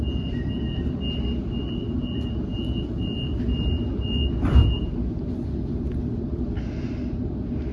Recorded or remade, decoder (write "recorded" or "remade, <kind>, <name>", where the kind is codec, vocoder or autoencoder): recorded